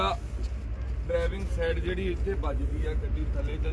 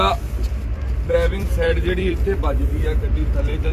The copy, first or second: second